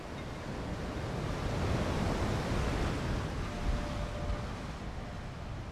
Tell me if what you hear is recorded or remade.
recorded